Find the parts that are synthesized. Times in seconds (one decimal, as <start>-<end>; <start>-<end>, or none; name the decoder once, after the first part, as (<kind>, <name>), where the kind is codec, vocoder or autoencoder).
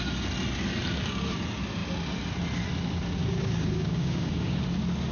3.2-4.6 (codec, DAC)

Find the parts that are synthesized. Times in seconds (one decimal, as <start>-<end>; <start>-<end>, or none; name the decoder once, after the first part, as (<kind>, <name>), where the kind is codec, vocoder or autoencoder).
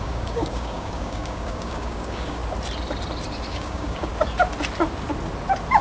0.0-2.4 (codec, DAC); 3.5-4.1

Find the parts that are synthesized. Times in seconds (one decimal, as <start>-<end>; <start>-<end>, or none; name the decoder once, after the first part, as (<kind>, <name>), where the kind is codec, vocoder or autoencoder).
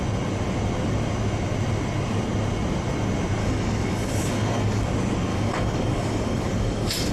3.4-4.8 (codec, DAC); 5.3-7.1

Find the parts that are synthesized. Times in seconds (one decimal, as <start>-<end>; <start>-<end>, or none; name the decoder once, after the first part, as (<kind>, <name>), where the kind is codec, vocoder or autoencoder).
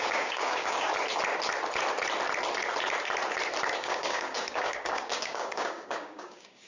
0.0-0.9 (codec, DAC); 3.8-6.7